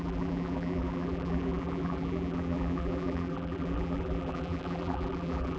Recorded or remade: remade